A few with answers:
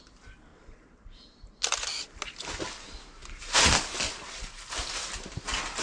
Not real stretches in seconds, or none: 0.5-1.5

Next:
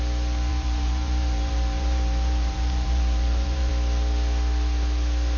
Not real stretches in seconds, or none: 0.5-3.7

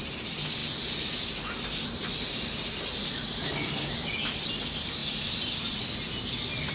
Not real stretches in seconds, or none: none